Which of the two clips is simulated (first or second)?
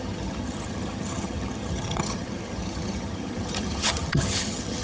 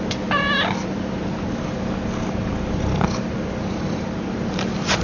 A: first